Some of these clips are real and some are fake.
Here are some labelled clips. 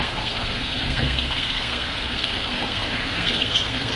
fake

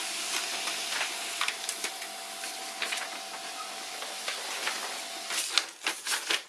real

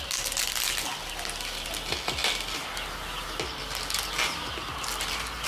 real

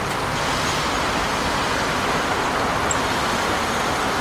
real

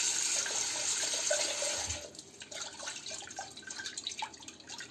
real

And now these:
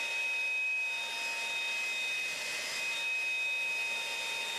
real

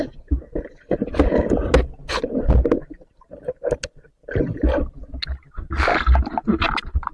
real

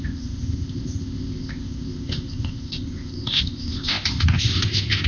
fake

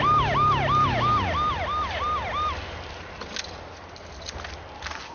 real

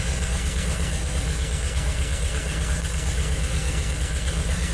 fake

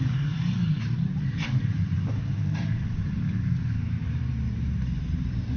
fake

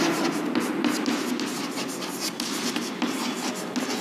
real